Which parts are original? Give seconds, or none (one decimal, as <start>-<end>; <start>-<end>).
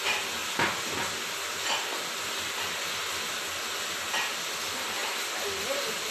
0.0-6.1